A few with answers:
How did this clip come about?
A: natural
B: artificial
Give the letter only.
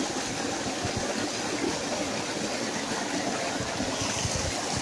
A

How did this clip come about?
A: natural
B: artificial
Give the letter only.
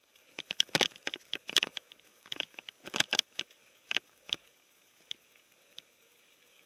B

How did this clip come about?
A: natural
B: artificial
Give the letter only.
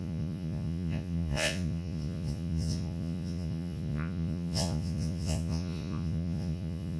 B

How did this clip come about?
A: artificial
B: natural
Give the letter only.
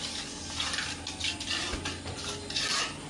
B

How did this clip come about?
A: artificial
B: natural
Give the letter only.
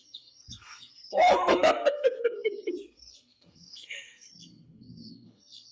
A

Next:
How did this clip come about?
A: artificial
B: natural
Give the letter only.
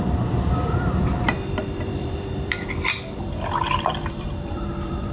A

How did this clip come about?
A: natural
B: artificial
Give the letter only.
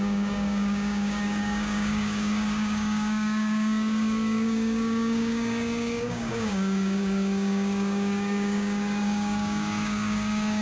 B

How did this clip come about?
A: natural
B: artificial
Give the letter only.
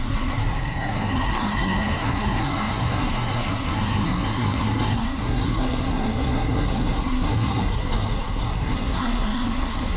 B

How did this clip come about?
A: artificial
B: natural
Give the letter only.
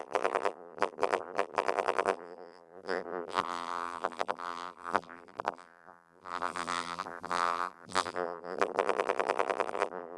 A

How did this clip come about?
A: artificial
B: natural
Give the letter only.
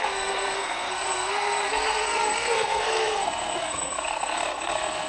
A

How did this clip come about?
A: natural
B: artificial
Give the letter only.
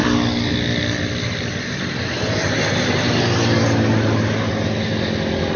A